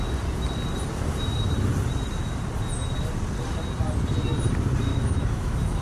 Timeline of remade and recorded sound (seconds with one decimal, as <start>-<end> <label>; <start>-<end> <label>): 0.0-4.9 recorded; 4.9-5.8 remade